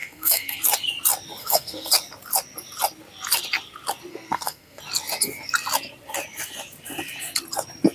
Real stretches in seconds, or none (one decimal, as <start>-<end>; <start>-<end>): 0.6-1.4; 1.9-4.1; 4.8-7.9